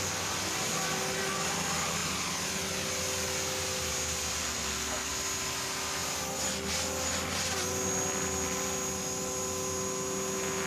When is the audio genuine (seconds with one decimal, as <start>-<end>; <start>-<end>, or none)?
0.0-4.4; 5.1-10.7